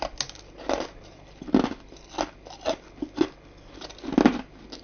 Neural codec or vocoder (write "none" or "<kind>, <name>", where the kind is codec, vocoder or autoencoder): none